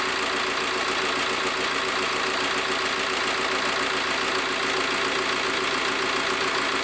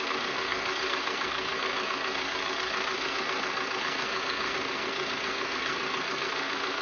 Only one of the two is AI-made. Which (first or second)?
second